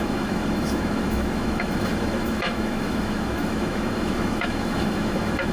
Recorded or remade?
remade